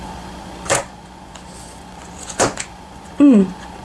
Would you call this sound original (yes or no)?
no